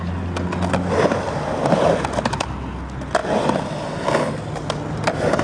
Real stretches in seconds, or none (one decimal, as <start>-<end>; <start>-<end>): 0.0-5.4